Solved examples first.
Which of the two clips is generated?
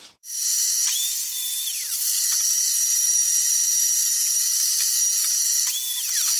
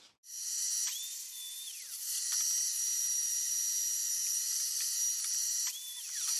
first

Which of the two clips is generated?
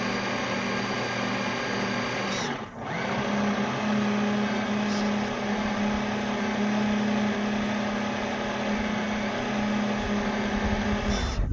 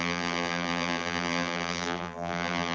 second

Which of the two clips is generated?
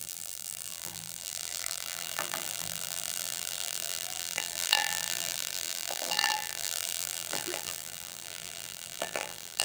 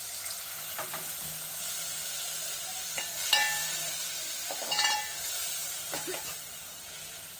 first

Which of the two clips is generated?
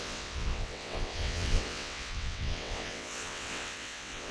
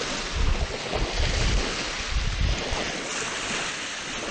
first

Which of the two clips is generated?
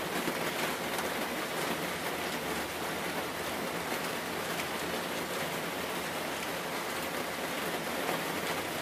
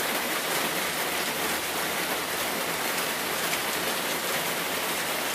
second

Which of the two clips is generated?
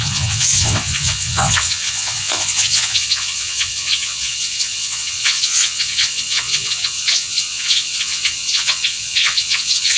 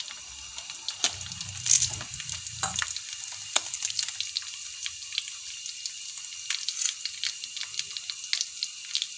first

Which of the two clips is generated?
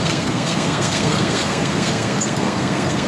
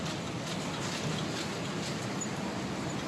first